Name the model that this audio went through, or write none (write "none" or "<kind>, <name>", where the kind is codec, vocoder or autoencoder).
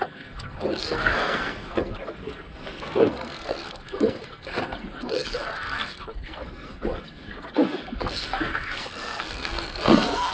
codec, SNAC